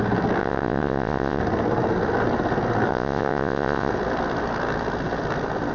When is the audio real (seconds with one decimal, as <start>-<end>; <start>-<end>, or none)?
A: 0.0-0.4; 1.4-2.9; 3.9-5.7